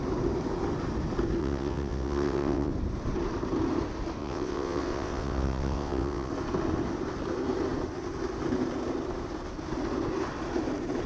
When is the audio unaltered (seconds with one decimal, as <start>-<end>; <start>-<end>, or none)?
0.0-1.4; 2.7-4.2; 6.3-11.1